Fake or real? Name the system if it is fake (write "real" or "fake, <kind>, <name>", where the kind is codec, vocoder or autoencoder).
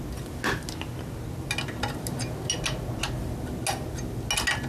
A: real